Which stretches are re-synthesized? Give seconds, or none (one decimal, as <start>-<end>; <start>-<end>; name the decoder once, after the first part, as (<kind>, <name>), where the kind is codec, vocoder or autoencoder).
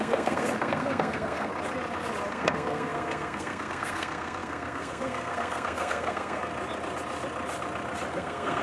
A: 0.0-1.5 (codec, SNAC); 2.3-6.5; 8.1-8.6